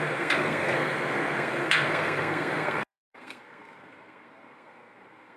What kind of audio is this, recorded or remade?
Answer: remade